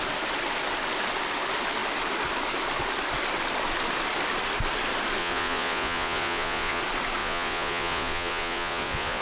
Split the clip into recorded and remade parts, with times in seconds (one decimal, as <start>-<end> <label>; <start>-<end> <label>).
0.0-5.2 recorded; 5.2-6.8 remade; 6.8-7.2 recorded; 7.2-9.2 remade